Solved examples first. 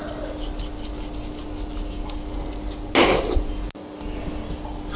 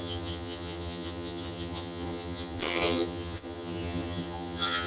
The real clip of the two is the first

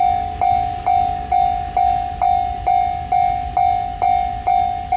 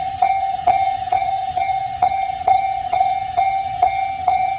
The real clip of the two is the first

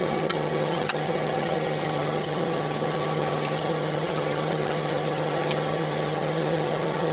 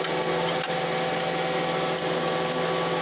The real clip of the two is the second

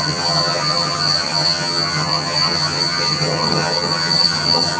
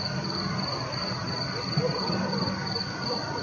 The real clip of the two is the second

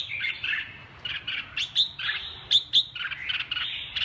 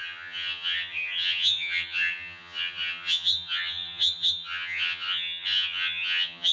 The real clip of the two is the first